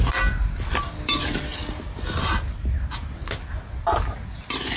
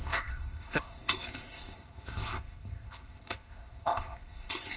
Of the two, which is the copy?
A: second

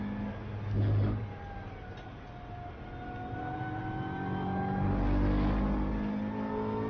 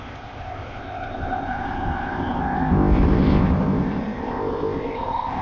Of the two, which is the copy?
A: second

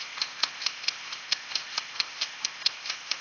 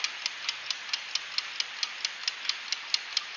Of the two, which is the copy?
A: first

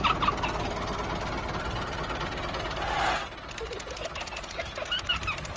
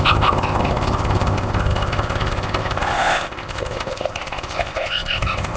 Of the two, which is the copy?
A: second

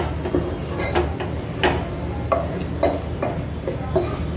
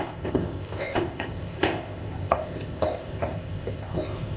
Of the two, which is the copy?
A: second